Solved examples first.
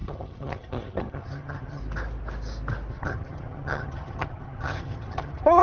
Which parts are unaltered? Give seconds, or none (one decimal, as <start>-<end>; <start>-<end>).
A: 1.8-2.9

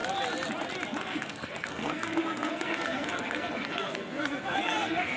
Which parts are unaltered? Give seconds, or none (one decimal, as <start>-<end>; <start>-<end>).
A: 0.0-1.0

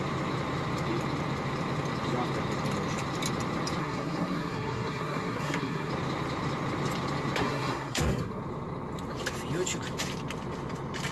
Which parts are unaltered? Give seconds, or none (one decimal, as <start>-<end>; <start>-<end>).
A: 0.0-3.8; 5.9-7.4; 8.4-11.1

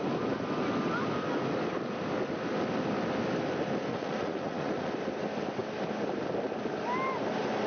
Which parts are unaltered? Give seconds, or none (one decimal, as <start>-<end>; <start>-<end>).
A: 0.0-3.9; 4.9-7.7

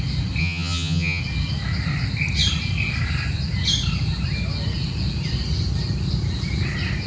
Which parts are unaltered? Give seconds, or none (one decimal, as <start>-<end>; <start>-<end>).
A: 0.0-0.4; 1.2-7.1

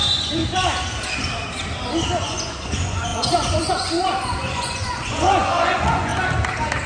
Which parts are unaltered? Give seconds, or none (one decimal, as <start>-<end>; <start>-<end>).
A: 0.4-2.2; 6.1-6.9

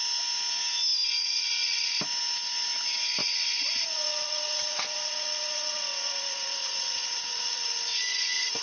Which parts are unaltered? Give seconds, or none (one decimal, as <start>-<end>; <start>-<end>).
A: 0.0-1.2; 2.0-3.2